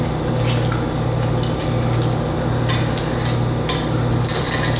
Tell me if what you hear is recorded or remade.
recorded